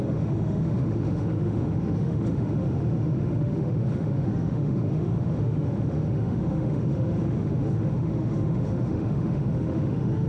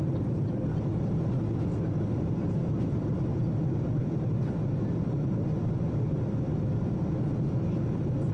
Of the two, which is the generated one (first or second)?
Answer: first